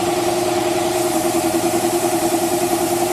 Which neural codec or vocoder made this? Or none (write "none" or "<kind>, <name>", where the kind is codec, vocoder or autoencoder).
vocoder, BigVGAN v2